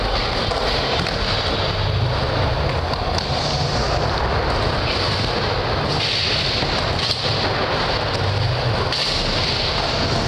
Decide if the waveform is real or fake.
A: real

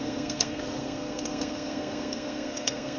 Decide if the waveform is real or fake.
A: fake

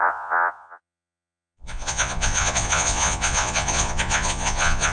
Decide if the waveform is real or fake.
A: fake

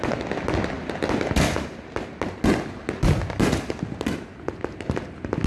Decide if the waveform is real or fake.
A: real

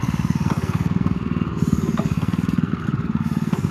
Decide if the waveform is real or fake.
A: fake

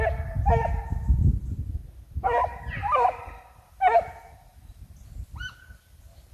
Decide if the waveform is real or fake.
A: real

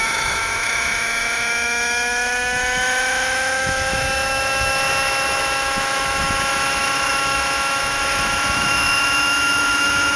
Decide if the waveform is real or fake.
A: fake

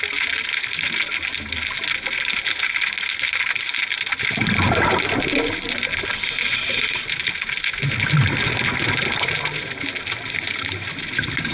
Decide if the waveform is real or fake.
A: real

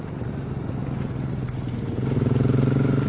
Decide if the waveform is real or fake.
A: real